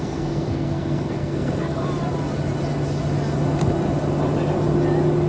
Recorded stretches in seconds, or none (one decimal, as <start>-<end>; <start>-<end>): 1.8-5.3